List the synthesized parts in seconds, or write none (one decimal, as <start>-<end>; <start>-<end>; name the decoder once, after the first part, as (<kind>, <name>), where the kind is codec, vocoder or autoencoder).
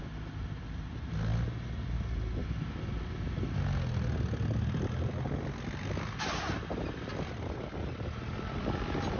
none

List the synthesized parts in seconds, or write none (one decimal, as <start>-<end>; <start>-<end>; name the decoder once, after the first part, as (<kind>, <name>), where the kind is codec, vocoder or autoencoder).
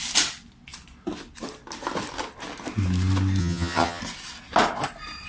3.4-4.0 (vocoder, HiFi-GAN)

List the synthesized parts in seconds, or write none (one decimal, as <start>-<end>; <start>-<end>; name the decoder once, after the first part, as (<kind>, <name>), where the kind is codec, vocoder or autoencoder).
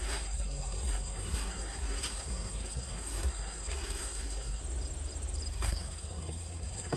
0.0-4.6 (codec, SNAC); 5.5-7.0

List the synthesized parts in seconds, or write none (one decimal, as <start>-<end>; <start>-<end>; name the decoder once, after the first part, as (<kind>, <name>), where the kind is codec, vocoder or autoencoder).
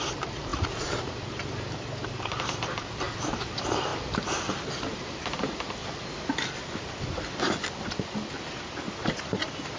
0.0-5.8 (vocoder, BigVGAN v2); 7.0-7.6; 9.0-9.8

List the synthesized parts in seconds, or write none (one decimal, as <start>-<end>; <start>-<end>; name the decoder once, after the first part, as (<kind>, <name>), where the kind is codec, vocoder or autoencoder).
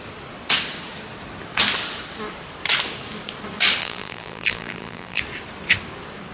3.8-5.2 (vocoder, BigVGAN v2)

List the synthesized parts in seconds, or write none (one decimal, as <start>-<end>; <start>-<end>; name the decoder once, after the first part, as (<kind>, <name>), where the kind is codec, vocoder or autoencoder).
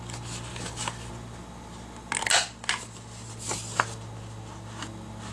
0.5-1.1 (codec, DAC)